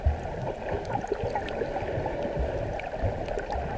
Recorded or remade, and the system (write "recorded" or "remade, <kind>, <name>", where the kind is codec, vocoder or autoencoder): recorded